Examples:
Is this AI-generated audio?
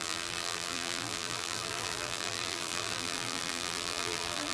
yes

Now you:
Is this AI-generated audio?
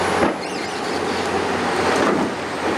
no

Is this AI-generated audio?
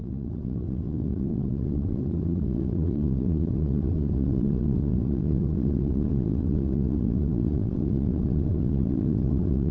yes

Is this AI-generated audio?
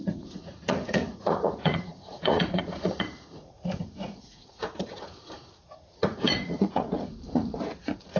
yes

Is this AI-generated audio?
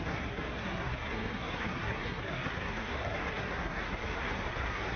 yes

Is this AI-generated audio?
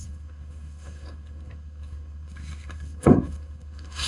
yes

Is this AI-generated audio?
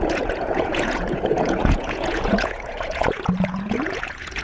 yes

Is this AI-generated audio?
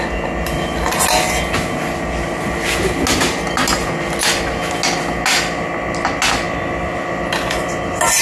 no